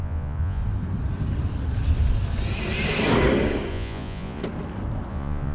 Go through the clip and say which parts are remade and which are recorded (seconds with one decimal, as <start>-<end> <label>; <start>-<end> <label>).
0.0-0.6 remade; 0.6-3.7 recorded; 3.7-4.4 remade; 4.4-5.1 recorded; 5.1-5.5 remade